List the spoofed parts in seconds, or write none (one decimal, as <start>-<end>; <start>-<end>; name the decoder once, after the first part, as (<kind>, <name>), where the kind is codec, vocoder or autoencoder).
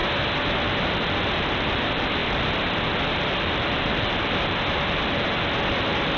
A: 1.8-2.2 (vocoder, BigVGAN v2); 3.3-6.2